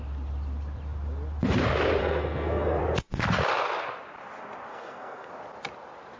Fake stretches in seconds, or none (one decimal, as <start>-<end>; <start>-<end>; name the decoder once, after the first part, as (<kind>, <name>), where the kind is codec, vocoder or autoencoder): 2.0-2.8 (codec, SNAC); 4.7-5.3

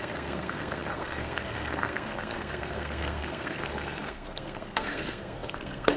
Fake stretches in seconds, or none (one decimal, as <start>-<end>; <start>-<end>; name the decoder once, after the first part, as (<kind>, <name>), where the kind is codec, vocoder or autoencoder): 0.0-6.0 (codec, SNAC)

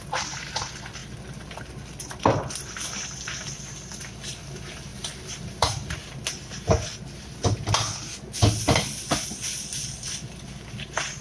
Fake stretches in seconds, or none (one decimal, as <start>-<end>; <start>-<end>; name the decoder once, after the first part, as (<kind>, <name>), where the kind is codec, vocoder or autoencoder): 4.9-6.3 (vocoder, BigVGAN v2)

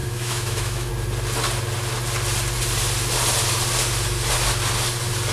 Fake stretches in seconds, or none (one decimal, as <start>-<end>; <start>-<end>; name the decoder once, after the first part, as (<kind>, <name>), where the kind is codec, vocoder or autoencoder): 0.0-0.9 (autoencoder, DAC-VAE)

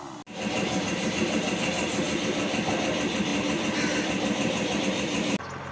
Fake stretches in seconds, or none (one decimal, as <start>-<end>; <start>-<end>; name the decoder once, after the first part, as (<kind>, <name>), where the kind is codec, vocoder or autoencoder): none

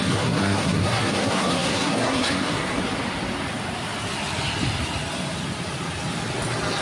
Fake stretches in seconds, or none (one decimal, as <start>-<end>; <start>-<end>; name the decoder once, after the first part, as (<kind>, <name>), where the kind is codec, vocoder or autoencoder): 0.0-2.8 (codec, SNAC)

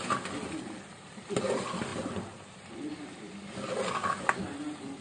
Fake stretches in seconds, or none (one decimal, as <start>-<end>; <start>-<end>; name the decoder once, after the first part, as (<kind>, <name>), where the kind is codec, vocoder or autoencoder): none

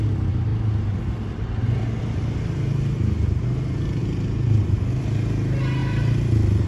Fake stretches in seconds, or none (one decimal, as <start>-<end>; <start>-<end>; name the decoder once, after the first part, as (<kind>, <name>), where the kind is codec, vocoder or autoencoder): 4.0-4.6 (vocoder, BigVGAN v2)